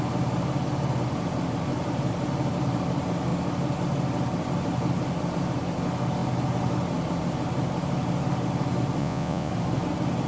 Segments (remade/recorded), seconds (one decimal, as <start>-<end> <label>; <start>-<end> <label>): 0.0-9.0 recorded; 9.0-9.5 remade; 9.5-10.3 recorded